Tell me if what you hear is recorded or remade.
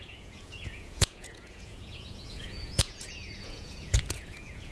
remade